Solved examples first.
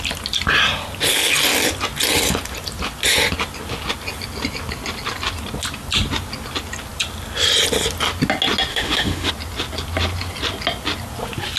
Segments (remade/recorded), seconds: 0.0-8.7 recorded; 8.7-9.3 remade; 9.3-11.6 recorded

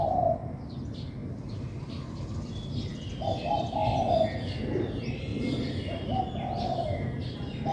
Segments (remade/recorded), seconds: 0.0-7.7 recorded

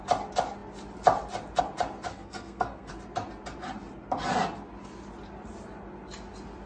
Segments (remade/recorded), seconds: 0.0-2.1 recorded; 2.1-2.9 remade; 2.9-6.7 recorded

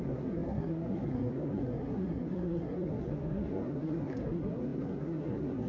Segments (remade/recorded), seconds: 0.0-5.7 remade

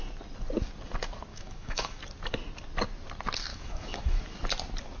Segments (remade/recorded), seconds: 0.0-1.3 recorded; 1.3-2.0 remade; 2.0-3.5 recorded; 3.5-4.2 remade; 4.2-5.0 recorded